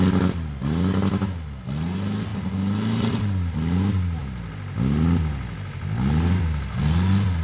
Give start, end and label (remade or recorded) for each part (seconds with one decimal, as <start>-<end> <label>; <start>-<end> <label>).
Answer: 0.0-7.4 recorded